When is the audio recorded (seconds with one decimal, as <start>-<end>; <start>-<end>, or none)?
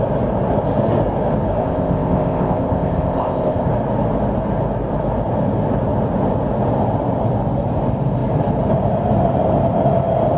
0.0-1.6; 3.7-10.4